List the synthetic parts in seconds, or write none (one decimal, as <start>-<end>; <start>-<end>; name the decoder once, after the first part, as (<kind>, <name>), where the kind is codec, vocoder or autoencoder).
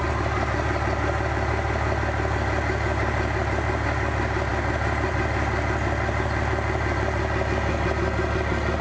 none